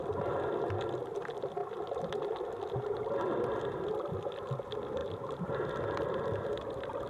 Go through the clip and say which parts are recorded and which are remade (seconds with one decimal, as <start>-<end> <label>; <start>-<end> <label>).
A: 0.0-5.0 recorded; 5.0-5.7 remade; 5.7-7.1 recorded